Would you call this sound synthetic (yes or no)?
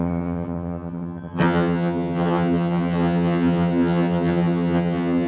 yes